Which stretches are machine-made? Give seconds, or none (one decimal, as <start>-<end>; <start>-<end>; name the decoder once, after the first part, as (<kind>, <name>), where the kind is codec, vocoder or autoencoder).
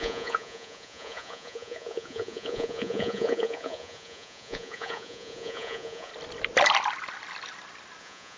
0.0-6.1 (vocoder, Vocos); 8.0-8.4